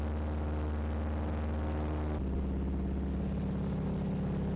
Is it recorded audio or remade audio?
recorded